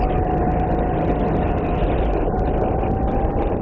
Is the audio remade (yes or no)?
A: no